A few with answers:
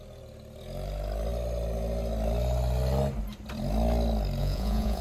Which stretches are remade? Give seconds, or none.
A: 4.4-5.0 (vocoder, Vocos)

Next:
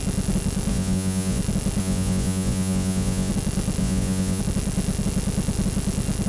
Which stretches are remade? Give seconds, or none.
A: 0.7-1.4 (vocoder, Vocos); 1.8-3.3; 3.8-4.4

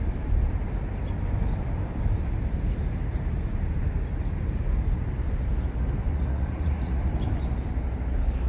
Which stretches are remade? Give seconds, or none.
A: 6.1-7.0 (vocoder, Vocos)

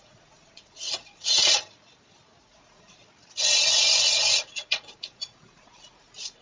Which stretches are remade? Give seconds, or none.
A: 0.0-1.5 (vocoder, Vocos); 2.4-3.0; 4.4-6.4

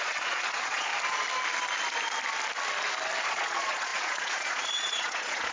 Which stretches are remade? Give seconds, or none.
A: 0.0-0.9 (vocoder, Vocos); 3.2-5.5